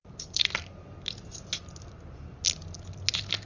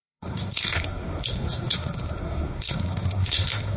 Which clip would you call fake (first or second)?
second